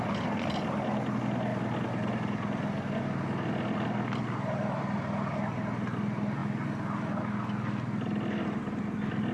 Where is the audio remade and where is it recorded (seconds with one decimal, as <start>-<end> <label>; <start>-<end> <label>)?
0.0-9.3 recorded

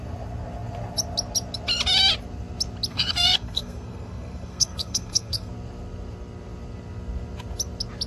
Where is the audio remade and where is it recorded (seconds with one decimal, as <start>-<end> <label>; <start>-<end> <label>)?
0.0-2.9 recorded; 2.9-5.5 remade; 5.5-8.1 recorded

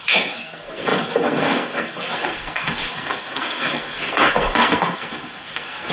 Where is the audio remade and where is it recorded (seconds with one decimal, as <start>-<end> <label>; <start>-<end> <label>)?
0.0-5.9 remade